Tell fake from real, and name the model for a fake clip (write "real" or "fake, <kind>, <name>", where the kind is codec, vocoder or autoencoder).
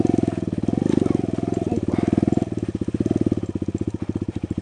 real